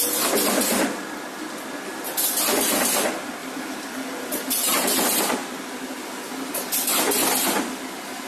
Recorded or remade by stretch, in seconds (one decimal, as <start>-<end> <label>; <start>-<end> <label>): 0.0-3.4 recorded; 3.4-5.0 remade; 5.0-8.3 recorded